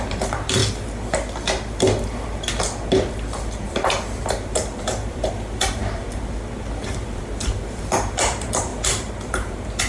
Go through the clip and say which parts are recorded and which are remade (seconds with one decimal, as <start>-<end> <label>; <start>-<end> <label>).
0.0-0.6 remade; 0.6-3.7 recorded; 3.7-5.8 remade; 5.8-7.0 recorded; 7.0-8.7 remade; 8.7-9.3 recorded; 9.3-9.9 remade